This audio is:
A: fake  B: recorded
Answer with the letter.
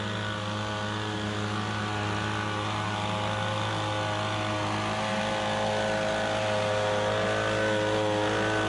B